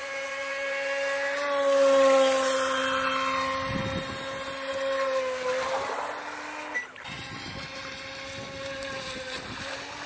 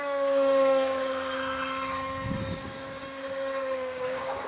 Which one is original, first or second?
first